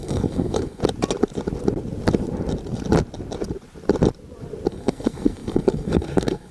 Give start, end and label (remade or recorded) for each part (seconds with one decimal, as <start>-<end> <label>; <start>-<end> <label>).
0.0-0.8 remade; 0.8-4.7 recorded; 4.7-6.5 remade